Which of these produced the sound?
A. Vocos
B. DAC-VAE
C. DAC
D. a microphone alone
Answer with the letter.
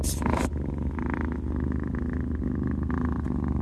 D